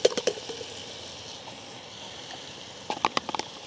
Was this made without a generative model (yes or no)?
yes